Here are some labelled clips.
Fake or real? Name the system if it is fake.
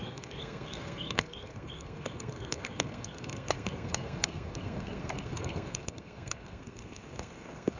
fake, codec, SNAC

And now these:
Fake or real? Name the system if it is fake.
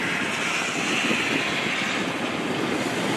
real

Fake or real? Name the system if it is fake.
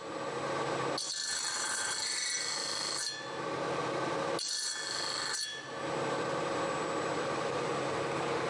real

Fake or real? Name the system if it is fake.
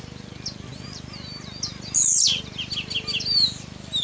real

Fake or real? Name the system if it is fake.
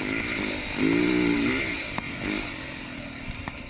real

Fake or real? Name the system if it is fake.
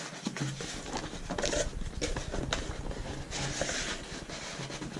real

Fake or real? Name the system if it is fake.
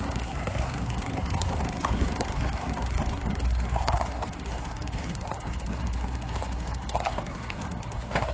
fake, codec, SNAC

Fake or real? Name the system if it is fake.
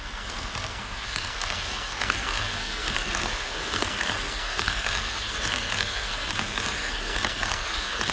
fake, codec, SNAC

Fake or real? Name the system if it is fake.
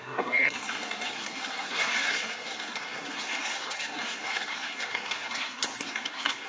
fake, codec, SNAC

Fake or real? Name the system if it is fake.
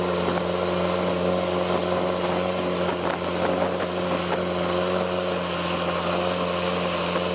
real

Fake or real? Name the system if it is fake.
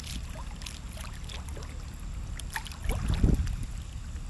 real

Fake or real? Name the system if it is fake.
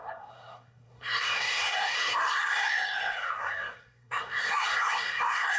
fake, codec, SNAC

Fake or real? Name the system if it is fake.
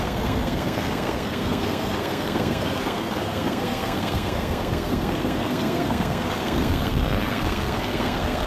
fake, codec, SNAC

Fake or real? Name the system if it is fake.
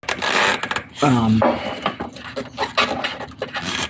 real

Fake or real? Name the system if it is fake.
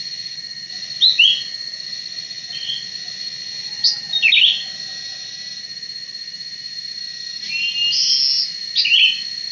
real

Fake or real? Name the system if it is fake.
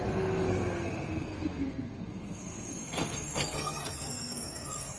fake, codec, SNAC